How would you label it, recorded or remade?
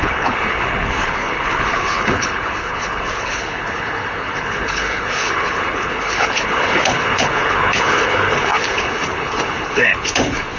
remade